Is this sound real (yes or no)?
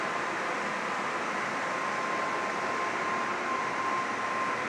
yes